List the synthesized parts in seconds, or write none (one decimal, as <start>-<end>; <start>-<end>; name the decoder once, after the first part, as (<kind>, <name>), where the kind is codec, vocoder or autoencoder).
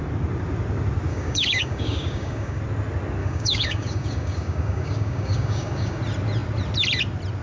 1.1-2.6 (codec, DAC); 3.2-6.0